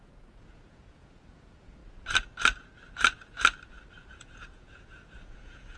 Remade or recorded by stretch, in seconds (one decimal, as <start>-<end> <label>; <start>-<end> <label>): 0.0-1.8 remade; 1.8-4.1 recorded; 4.1-5.8 remade